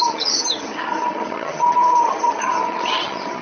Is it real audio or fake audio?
fake